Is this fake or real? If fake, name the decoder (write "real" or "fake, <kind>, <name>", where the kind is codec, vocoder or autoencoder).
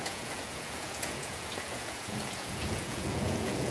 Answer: fake, vocoder, Vocos